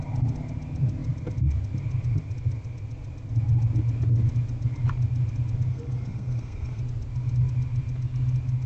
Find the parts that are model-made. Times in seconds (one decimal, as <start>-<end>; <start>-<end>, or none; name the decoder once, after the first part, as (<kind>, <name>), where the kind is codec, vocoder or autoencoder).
5.7-6.8 (codec, SNAC)